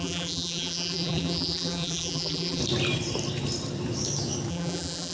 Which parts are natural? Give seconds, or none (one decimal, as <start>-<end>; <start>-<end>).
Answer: 2.6-4.5